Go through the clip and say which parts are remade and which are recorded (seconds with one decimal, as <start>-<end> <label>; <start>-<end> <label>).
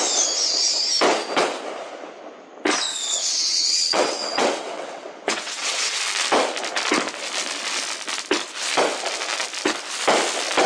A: 0.0-2.9 recorded; 2.9-6.0 remade; 6.0-10.7 recorded